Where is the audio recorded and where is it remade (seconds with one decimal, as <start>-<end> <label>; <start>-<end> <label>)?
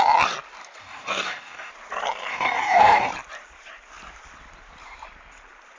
0.0-0.8 recorded; 0.8-1.7 remade; 1.7-2.3 recorded; 2.3-3.1 remade; 3.1-5.8 recorded